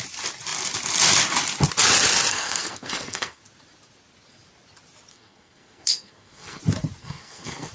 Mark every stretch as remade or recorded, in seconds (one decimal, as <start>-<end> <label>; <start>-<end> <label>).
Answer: 0.0-2.3 recorded; 2.3-3.4 remade; 3.4-5.1 recorded; 5.1-6.6 remade; 6.6-7.0 recorded; 7.0-7.7 remade